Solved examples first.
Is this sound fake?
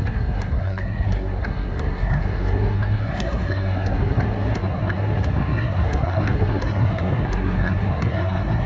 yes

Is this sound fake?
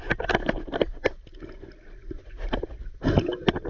no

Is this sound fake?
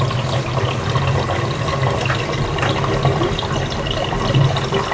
no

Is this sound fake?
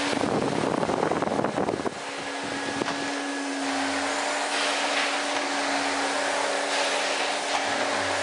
no